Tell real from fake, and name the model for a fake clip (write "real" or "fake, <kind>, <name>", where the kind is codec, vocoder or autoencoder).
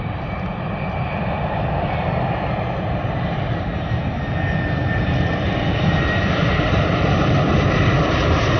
fake, vocoder, BigVGAN v2